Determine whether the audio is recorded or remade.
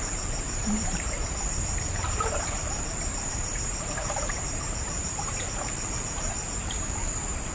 remade